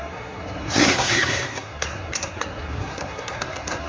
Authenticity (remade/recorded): remade